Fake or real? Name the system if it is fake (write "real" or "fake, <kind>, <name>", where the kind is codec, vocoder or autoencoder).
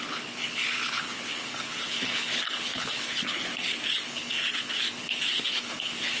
fake, codec, HILCodec